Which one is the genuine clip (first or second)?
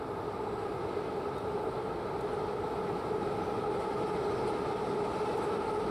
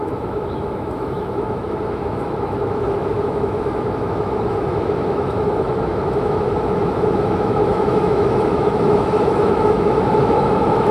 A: first